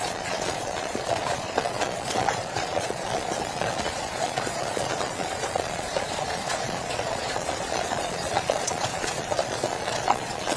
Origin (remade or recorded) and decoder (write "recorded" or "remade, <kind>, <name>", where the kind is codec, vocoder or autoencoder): remade, vocoder, Vocos